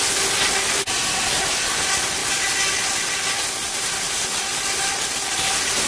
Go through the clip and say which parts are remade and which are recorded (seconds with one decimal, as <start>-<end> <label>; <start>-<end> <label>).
0.0-5.9 recorded

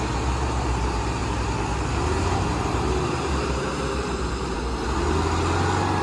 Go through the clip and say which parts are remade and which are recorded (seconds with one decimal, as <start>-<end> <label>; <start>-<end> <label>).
0.0-1.2 remade; 1.2-2.5 recorded; 2.5-4.6 remade; 4.6-6.0 recorded

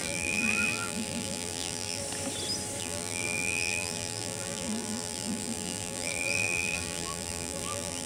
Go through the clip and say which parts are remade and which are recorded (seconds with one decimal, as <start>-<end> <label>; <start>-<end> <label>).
0.0-2.0 remade; 2.0-2.8 recorded; 2.8-8.1 remade